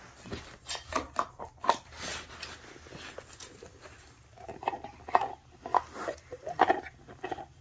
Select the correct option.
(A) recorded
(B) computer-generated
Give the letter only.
A